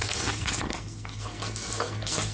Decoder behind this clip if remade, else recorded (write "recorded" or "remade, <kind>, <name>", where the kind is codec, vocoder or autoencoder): remade, codec, SNAC